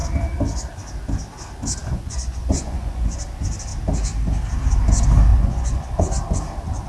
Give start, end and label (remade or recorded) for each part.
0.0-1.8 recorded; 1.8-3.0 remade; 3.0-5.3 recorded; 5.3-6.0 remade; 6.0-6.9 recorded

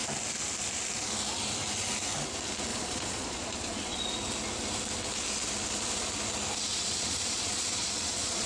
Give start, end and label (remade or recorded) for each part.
0.0-2.7 recorded; 2.7-4.0 remade; 4.0-6.7 recorded; 6.7-8.5 remade

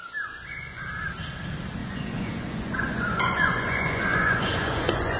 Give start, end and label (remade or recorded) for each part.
0.0-0.8 remade; 0.8-1.8 recorded; 1.8-5.2 remade

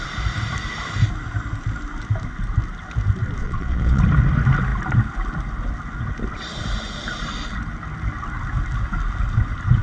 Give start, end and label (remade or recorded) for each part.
0.0-3.4 recorded; 3.4-4.0 remade; 4.0-9.8 recorded